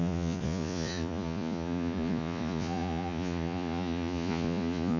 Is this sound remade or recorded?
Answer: remade